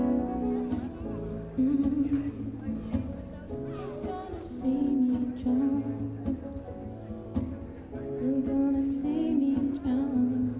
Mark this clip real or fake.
real